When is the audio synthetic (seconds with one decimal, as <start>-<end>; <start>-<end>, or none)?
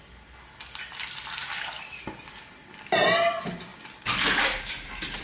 none